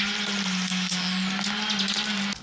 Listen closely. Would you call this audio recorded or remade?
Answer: recorded